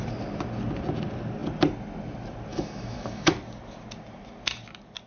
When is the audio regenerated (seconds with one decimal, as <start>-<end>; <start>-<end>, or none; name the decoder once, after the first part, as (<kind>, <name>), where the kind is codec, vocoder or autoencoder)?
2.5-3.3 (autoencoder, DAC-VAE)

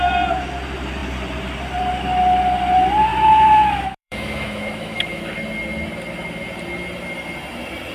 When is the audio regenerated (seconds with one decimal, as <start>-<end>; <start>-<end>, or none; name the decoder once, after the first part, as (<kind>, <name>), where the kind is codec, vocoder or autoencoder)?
3.1-5.2 (autoencoder, DAC-VAE)

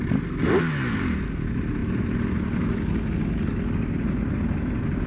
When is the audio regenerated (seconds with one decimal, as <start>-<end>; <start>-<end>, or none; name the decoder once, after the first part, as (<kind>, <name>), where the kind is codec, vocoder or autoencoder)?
none

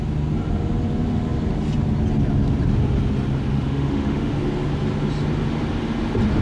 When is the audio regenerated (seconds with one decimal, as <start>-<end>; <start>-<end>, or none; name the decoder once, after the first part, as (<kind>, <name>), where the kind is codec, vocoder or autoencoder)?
3.5-4.3 (autoencoder, DAC-VAE)

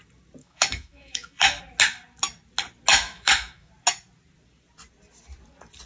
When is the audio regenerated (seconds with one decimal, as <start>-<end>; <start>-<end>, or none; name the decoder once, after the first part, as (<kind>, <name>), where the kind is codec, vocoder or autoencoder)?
0.4-1.6 (autoencoder, DAC-VAE); 2.9-3.7

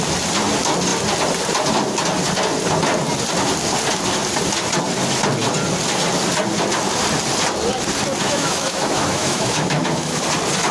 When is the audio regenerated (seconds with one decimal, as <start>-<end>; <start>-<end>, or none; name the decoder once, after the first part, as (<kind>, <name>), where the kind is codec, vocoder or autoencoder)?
8.2-10.2 (autoencoder, DAC-VAE)

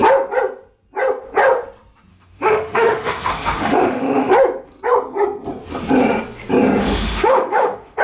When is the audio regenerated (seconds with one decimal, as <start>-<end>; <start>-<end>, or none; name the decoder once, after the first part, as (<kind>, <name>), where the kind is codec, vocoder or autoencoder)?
2.1-4.3 (autoencoder, DAC-VAE); 6.8-8.0

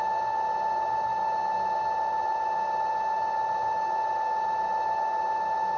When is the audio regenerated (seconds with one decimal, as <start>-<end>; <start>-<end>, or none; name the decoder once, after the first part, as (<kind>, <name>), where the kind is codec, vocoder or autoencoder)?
none